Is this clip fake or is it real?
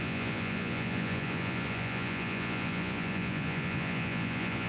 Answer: fake